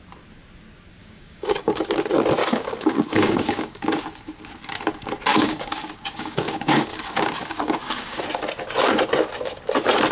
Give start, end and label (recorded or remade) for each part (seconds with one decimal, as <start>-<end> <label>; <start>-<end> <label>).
0.0-1.0 recorded; 1.0-1.8 remade; 1.8-2.4 recorded; 2.4-4.0 remade; 4.0-5.3 recorded; 5.3-8.2 remade; 8.2-10.1 recorded